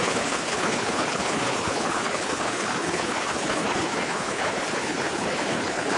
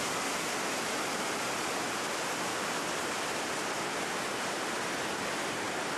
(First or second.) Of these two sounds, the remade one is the first